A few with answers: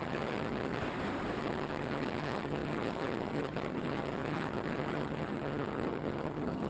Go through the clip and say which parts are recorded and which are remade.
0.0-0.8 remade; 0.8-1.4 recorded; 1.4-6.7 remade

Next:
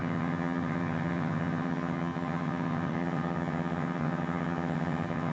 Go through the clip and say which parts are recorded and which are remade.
0.0-5.3 remade

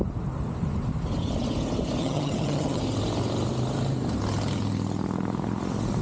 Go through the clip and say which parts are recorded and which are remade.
0.0-2.0 recorded; 2.0-2.8 remade; 2.8-6.0 recorded

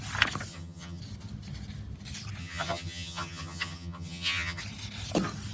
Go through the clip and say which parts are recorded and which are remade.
0.0-0.5 recorded; 0.5-1.0 remade; 1.0-2.4 recorded; 2.4-4.6 remade; 4.6-5.5 recorded

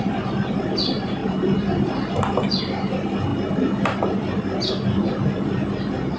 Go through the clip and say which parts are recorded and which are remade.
0.0-6.2 recorded

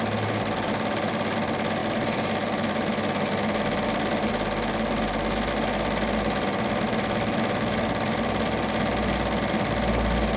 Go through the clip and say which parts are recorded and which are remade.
0.0-10.4 recorded